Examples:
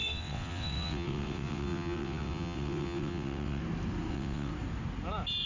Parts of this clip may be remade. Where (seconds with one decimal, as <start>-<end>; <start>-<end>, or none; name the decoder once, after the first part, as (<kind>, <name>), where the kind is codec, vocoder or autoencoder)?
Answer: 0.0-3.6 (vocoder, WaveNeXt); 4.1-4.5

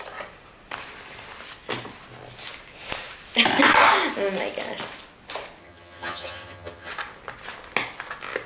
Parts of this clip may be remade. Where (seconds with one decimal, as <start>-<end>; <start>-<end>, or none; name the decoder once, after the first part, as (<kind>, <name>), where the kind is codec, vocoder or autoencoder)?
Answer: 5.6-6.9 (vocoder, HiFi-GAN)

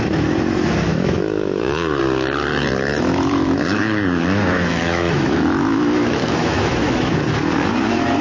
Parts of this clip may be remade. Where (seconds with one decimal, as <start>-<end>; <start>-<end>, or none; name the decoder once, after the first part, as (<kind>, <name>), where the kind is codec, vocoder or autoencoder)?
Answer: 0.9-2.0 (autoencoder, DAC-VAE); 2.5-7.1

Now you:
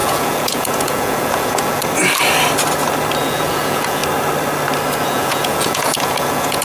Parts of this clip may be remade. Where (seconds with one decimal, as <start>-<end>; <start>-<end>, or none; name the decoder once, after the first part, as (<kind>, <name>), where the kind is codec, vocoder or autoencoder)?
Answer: 0.0-1.8 (vocoder, Vocos); 3.2-4.0; 5.0-6.6

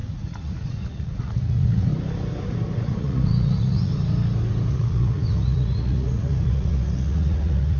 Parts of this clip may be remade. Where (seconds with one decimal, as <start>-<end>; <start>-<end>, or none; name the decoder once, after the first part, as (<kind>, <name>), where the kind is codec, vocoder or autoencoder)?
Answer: 0.0-1.9 (vocoder, Vocos); 2.8-3.9; 4.7-7.8

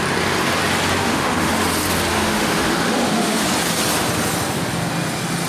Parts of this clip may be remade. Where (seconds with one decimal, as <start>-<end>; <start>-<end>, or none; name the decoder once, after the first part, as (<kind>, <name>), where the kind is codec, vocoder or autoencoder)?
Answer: 1.0-1.5 (autoencoder, DAC-VAE); 2.1-3.4

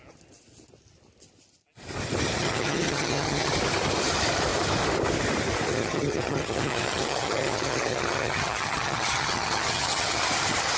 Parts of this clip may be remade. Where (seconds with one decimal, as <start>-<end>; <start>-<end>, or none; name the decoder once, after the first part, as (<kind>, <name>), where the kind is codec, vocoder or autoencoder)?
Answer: 2.4-3.5 (vocoder, HiFi-GAN); 5.7-10.2